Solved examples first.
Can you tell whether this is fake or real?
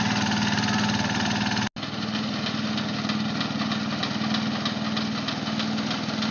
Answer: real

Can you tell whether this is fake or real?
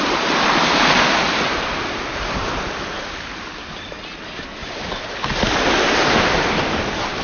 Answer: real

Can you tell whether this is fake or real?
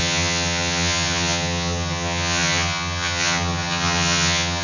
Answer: fake